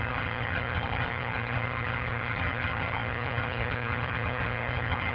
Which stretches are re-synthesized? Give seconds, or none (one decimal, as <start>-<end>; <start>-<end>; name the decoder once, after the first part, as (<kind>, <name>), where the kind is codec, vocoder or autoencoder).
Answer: 0.0-5.1 (vocoder, HiFi-GAN)